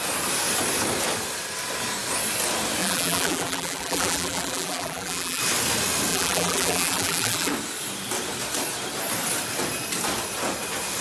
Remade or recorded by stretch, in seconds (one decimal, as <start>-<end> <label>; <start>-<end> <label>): 0.0-2.8 recorded; 2.8-5.4 remade; 5.4-6.1 recorded; 6.1-7.5 remade; 7.5-11.0 recorded